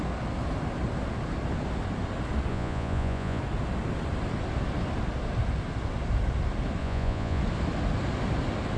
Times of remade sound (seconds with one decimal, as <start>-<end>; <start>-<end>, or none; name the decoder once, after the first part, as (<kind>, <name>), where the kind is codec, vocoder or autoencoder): 2.5-3.4 (vocoder, Vocos); 6.8-7.4